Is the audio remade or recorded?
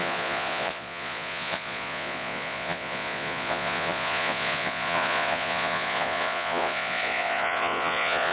remade